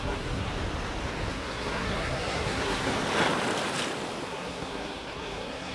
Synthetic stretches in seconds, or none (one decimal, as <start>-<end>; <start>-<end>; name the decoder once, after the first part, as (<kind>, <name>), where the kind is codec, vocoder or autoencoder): 0.0-0.5 (codec, SNAC); 1.3-2.9; 4.2-5.7